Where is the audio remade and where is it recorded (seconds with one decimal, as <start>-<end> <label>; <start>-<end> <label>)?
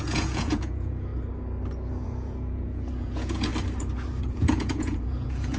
0.0-1.1 remade; 1.1-1.9 recorded; 1.9-3.5 remade; 3.5-4.2 recorded; 4.2-5.6 remade